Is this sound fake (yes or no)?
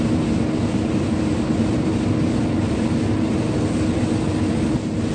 no